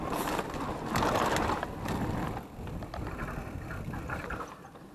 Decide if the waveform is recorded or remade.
recorded